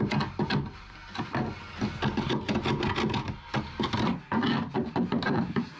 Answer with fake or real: real